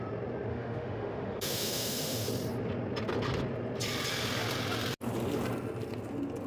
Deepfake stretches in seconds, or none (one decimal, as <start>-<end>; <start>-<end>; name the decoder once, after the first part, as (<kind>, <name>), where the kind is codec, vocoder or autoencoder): 0.5-2.3 (autoencoder, DAC-VAE)